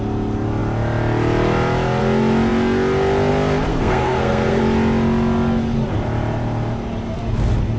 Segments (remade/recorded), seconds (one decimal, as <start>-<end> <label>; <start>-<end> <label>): 0.0-3.7 recorded; 3.7-4.6 remade; 4.6-7.8 recorded